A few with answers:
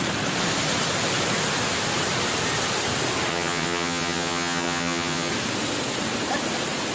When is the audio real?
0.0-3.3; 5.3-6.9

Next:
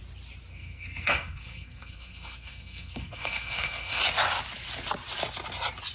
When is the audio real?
0.0-0.5; 4.0-5.9